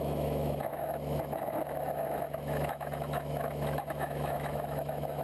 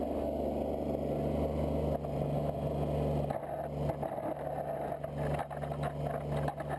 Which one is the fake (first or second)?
first